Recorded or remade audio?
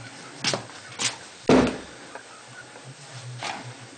recorded